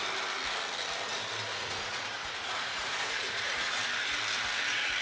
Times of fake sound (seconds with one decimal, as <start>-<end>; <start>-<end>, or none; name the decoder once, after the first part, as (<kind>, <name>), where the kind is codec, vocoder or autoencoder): 1.6-3.8 (vocoder, Vocos)